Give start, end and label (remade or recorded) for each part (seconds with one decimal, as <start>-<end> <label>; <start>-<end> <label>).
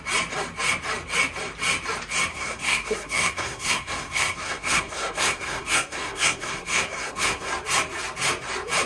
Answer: 0.0-2.3 recorded; 2.3-7.5 remade; 7.5-8.9 recorded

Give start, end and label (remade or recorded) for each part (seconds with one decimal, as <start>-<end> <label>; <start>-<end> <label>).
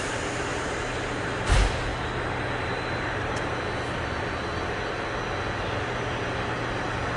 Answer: 0.0-0.5 recorded; 0.5-1.3 remade; 1.3-1.9 recorded; 1.9-3.5 remade; 3.5-7.2 recorded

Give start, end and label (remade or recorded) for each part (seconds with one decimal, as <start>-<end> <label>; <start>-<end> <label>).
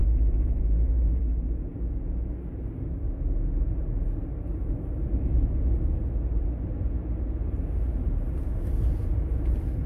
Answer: 0.0-1.2 remade; 1.2-9.9 recorded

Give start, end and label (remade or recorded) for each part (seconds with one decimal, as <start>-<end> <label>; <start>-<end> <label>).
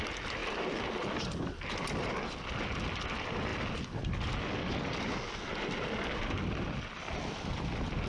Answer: 0.0-8.1 recorded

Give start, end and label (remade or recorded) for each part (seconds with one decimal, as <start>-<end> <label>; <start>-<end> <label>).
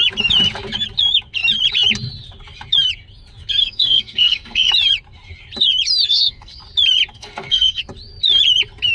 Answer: 0.0-3.6 recorded; 3.6-4.7 remade; 4.7-6.1 recorded; 6.1-6.6 remade; 6.6-7.1 recorded; 7.1-7.8 remade; 7.8-8.9 recorded